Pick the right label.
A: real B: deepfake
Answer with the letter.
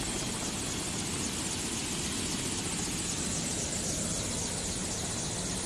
A